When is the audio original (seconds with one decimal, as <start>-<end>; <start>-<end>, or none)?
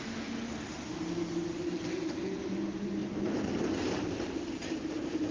0.0-5.3